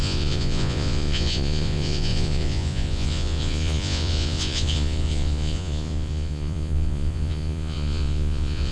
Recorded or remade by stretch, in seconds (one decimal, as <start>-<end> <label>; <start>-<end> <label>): 0.0-8.7 remade